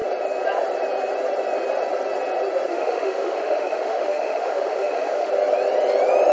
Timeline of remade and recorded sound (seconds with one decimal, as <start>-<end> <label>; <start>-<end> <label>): 0.0-2.7 recorded; 2.7-5.3 remade; 5.3-6.3 recorded